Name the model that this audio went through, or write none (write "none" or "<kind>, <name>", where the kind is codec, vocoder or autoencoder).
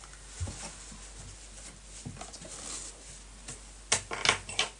none